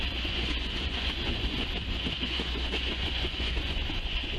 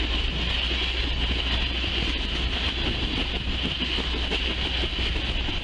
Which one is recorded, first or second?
second